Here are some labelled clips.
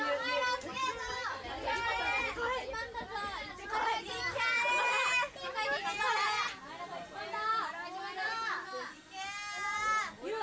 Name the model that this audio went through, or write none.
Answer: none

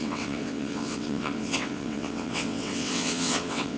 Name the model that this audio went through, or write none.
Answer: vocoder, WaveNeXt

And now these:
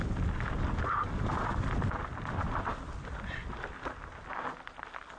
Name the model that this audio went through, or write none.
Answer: none